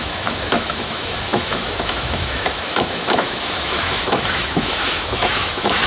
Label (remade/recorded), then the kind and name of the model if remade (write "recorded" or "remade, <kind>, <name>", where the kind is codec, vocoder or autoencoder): remade, autoencoder, DAC-VAE